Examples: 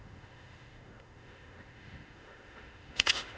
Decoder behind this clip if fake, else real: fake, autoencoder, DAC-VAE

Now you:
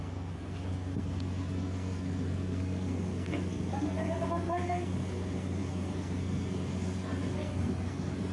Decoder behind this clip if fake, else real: fake, codec, SNAC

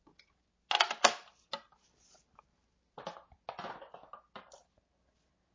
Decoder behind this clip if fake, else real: real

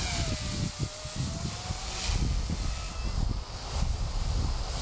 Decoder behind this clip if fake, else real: real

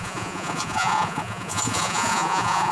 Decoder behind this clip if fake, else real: fake, vocoder, Vocos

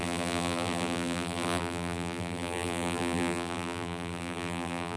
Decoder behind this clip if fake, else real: fake, vocoder, BigVGAN v2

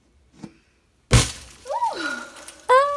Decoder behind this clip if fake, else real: real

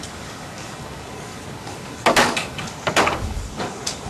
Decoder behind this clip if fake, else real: fake, codec, DAC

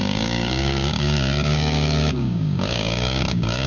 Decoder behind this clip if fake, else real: fake, codec, DAC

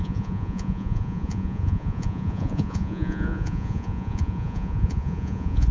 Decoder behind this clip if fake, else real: fake, vocoder, Vocos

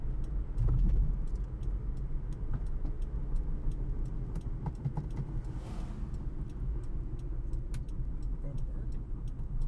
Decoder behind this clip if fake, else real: real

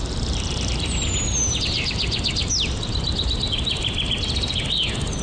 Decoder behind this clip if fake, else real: real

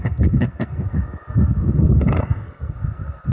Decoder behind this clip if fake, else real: fake, codec, SNAC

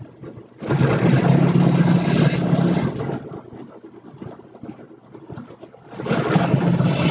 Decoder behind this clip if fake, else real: real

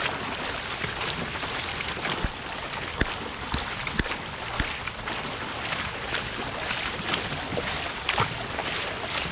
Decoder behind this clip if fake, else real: real